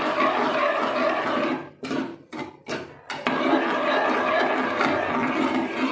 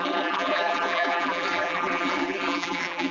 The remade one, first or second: second